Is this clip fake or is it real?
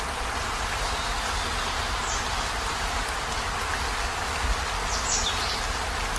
real